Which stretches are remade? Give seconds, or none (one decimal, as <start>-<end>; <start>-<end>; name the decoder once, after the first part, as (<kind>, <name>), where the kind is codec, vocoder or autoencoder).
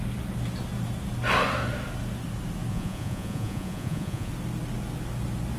2.7-4.3 (vocoder, Vocos)